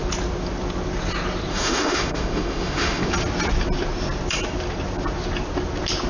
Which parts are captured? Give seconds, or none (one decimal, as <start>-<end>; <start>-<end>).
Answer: 0.0-1.5; 3.1-6.1